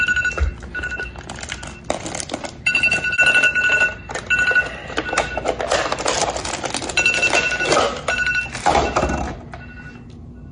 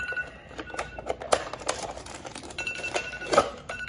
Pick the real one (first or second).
first